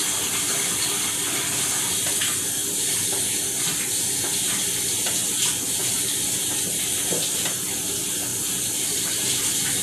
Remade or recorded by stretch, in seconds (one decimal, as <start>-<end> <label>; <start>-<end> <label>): 0.0-2.6 recorded; 2.6-3.1 remade; 3.1-4.3 recorded; 4.3-4.9 remade; 4.9-8.3 recorded; 8.3-9.4 remade; 9.4-9.8 recorded